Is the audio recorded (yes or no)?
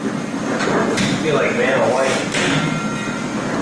yes